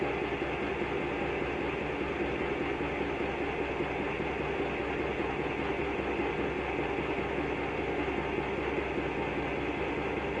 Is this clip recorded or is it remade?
recorded